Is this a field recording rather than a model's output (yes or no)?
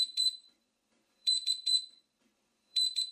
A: no